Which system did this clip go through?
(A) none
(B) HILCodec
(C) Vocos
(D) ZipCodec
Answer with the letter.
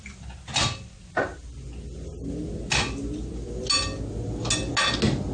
A